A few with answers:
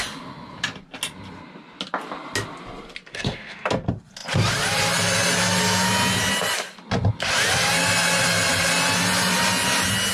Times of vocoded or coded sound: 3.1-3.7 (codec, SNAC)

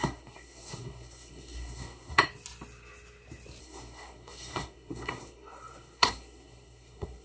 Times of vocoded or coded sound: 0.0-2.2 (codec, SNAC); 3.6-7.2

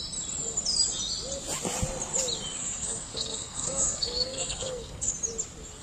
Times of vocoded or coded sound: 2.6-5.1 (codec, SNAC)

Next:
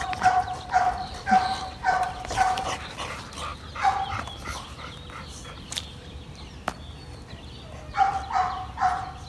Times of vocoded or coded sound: none

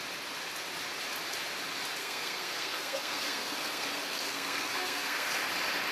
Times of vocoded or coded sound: 2.0-5.5 (codec, SNAC)

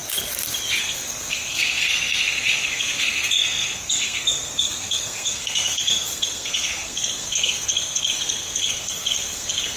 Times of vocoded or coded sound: 0.8-9.8 (codec, SNAC)

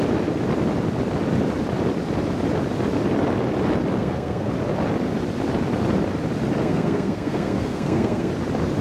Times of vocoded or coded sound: 4.0-4.5 (codec, SNAC); 6.6-8.3